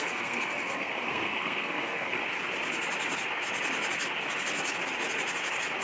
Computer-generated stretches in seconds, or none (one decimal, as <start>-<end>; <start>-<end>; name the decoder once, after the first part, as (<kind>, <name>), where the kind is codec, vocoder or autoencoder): 0.0-2.2 (codec, SNAC)